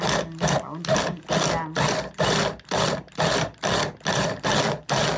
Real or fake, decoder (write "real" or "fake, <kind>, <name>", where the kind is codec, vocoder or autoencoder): real